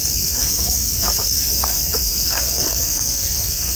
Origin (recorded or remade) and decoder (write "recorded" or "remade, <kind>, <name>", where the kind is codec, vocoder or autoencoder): remade, codec, SNAC